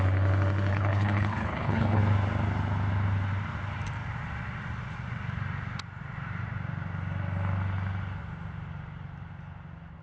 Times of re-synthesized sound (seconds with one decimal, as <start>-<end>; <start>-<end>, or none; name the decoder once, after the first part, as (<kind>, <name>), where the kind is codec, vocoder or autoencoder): 0.7-2.0 (codec, HILCodec)